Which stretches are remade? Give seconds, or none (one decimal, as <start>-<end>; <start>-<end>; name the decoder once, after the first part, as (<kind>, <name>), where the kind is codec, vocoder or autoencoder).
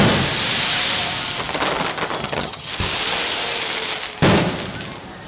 2.2-2.7 (vocoder, HiFi-GAN)